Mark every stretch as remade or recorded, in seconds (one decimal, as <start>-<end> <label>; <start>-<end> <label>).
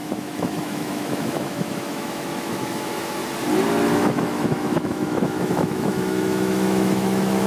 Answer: 0.0-3.2 remade; 3.2-3.9 recorded; 3.9-7.5 remade